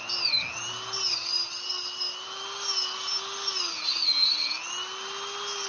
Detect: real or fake real